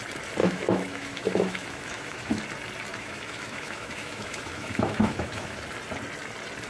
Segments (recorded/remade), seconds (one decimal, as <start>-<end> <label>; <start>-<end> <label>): 0.0-0.4 recorded; 0.4-2.4 remade; 2.4-2.9 recorded; 2.9-5.6 remade; 5.6-6.7 recorded